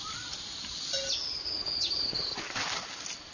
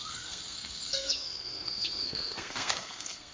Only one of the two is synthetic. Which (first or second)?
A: second